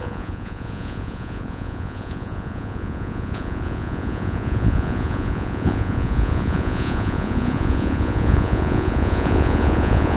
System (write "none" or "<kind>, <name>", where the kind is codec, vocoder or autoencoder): vocoder, Vocos